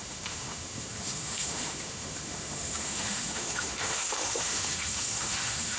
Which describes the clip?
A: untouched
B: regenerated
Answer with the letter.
B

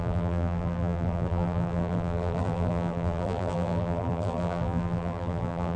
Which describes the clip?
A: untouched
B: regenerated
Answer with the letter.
B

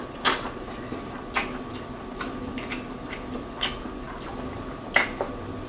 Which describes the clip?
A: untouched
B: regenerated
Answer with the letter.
A